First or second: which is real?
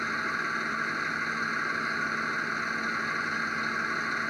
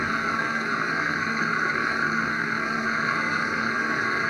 first